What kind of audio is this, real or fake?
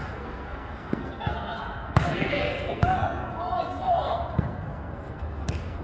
fake